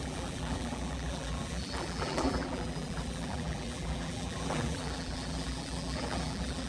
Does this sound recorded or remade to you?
remade